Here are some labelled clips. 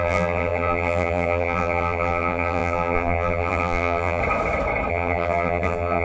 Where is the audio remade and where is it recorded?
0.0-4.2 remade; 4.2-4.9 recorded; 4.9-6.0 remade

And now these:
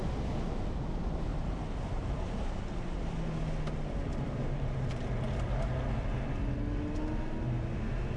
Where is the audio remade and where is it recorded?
0.0-1.3 recorded; 1.3-2.6 remade; 2.6-4.1 recorded; 4.1-4.9 remade; 4.9-8.2 recorded